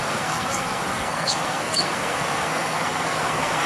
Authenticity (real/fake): fake